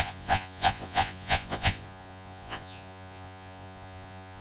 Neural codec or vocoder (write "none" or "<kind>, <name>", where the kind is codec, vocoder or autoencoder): vocoder, Vocos